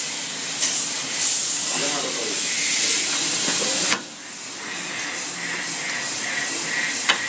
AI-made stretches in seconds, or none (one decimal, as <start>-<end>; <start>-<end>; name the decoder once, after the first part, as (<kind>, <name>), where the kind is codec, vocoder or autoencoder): none